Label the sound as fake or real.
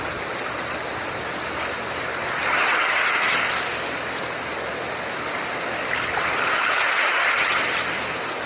real